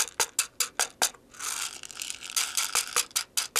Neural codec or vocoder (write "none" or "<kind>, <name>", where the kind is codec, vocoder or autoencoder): none